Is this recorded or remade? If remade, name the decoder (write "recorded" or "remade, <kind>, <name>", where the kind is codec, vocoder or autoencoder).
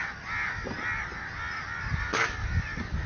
recorded